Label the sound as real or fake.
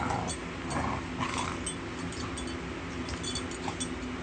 real